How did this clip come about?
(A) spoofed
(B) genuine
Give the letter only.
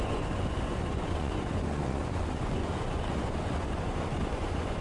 A